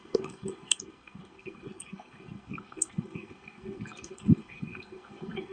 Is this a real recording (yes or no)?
no